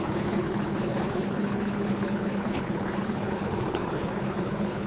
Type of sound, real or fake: fake